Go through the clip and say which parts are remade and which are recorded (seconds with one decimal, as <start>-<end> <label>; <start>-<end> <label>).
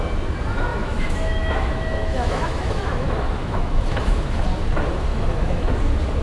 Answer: 0.0-0.7 recorded; 0.7-4.4 remade; 4.4-5.1 recorded; 5.1-5.7 remade; 5.7-6.2 recorded